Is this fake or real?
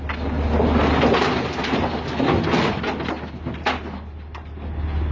real